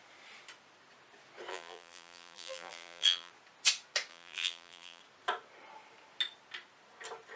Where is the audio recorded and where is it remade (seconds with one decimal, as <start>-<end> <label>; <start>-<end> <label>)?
0.0-1.5 recorded; 1.5-3.3 remade; 3.3-4.1 recorded; 4.1-5.0 remade; 5.0-7.4 recorded